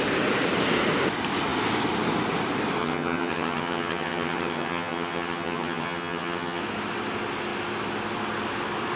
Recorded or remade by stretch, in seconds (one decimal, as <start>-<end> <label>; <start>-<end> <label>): 0.0-2.8 recorded; 2.8-6.6 remade; 6.6-9.0 recorded